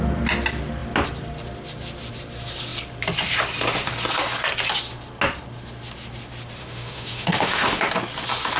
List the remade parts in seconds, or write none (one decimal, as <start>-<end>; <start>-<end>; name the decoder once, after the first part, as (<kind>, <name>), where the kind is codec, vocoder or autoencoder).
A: 6.6-7.8 (autoencoder, DAC-VAE)